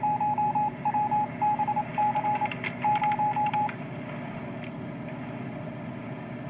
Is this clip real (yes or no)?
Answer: yes